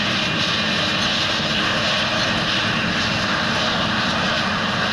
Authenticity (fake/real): real